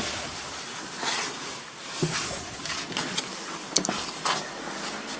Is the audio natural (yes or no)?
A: yes